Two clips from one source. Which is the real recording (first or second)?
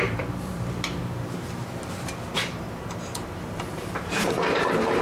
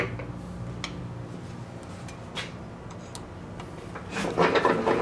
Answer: second